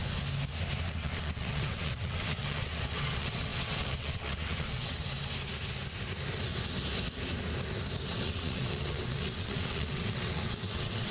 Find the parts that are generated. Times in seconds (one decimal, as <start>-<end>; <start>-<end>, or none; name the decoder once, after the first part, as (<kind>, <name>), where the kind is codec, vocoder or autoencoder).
0.9-5.0 (vocoder, WaveNeXt); 8.1-11.1